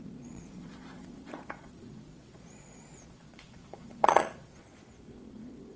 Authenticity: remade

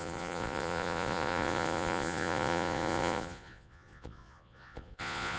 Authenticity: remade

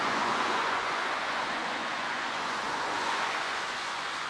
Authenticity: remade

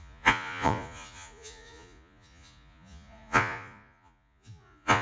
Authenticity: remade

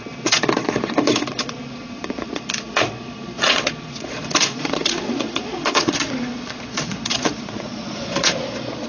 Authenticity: remade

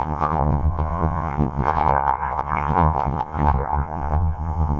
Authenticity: remade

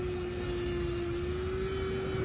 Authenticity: recorded